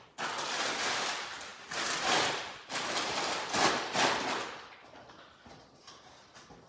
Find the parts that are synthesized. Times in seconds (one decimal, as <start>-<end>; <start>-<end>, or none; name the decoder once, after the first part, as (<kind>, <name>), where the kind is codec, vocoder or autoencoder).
none